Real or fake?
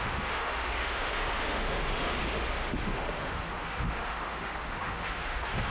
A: fake